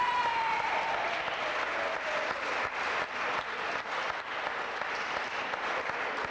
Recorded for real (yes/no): yes